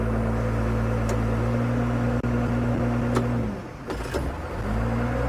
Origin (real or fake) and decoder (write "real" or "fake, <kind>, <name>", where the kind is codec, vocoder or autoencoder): real